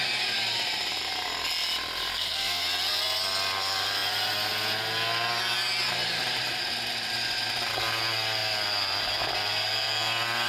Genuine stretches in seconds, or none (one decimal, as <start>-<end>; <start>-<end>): 0.0-2.1; 2.6-10.5